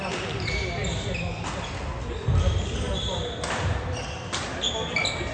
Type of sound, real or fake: real